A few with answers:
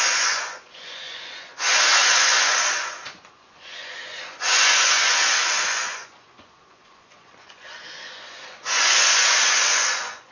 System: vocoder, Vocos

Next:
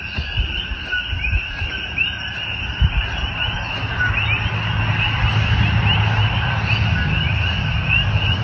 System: none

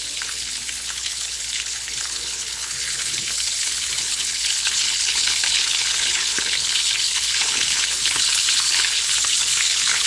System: codec, HILCodec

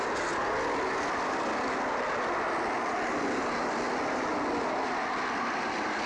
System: none